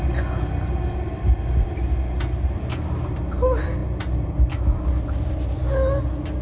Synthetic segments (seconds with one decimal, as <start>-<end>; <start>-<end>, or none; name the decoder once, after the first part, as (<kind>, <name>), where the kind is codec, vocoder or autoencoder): none